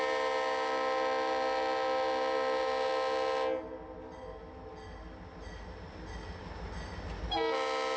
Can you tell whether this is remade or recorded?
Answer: recorded